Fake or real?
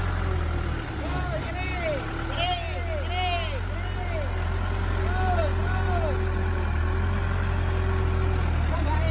real